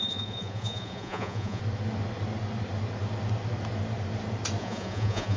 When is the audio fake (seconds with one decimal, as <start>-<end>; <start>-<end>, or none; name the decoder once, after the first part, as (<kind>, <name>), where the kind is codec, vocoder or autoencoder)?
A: 0.0-1.6 (vocoder, Vocos); 4.6-5.4